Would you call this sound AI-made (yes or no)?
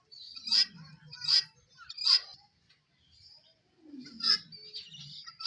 yes